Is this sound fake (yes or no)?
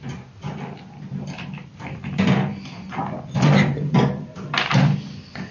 yes